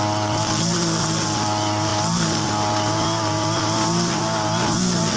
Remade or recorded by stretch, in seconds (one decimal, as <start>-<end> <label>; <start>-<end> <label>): 0.0-5.2 recorded